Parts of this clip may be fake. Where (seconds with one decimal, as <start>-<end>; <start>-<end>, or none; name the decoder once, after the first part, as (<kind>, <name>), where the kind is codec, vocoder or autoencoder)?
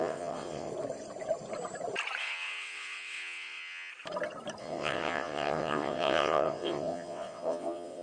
0.0-0.7 (vocoder, WaveNeXt); 2.2-3.9; 4.6-8.0